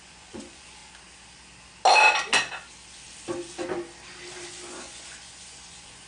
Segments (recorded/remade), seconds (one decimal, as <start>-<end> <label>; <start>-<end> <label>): 0.0-0.8 remade; 0.8-4.5 recorded; 4.5-6.1 remade